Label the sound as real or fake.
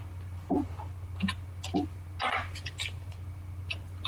real